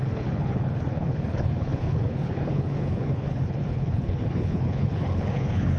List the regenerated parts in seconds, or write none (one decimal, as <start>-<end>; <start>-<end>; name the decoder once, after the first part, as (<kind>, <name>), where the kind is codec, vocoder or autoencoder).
0.0-5.8 (codec, HILCodec)